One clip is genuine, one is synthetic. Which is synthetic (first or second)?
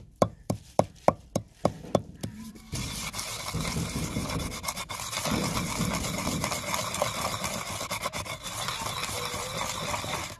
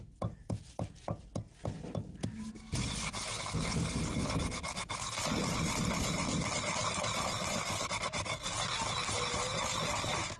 first